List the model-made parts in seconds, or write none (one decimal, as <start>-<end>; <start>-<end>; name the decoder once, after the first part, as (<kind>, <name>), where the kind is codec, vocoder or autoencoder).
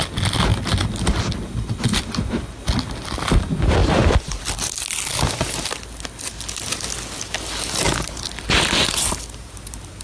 3.8-4.9 (vocoder, BigVGAN v2)